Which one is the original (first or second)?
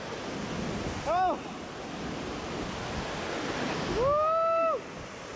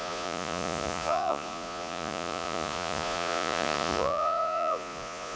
first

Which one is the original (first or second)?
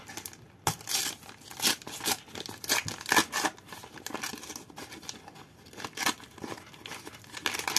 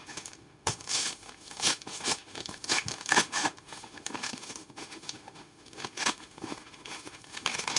first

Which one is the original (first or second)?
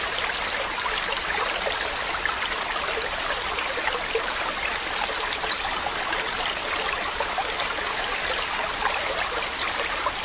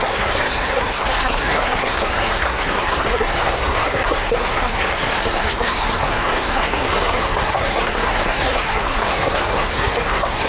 first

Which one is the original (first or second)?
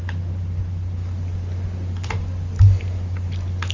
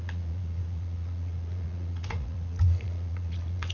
first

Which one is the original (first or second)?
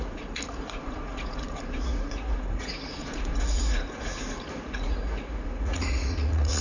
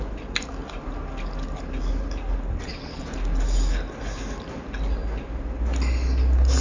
second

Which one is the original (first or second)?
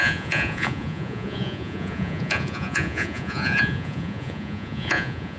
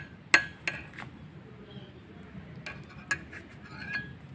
second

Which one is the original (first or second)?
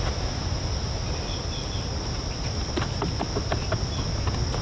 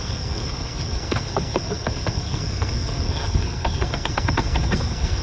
first